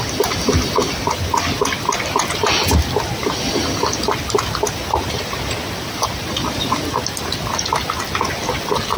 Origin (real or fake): real